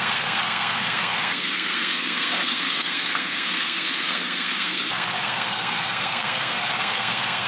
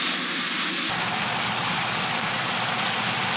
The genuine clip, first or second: second